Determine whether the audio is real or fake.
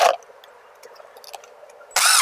real